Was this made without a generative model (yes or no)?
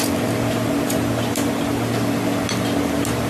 yes